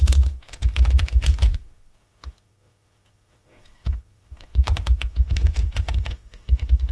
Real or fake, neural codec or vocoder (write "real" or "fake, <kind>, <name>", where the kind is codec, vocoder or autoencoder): fake, autoencoder, DAC-VAE